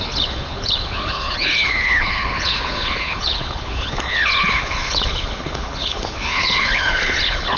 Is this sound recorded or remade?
remade